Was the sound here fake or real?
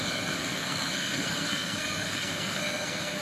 fake